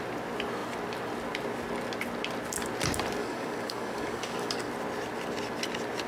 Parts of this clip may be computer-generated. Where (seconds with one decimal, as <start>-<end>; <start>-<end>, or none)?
3.2-4.7